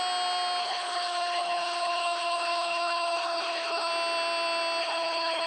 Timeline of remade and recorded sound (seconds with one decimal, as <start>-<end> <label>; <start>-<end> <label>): 0.0-0.6 recorded; 0.6-3.9 remade; 3.9-4.8 recorded; 4.8-5.5 remade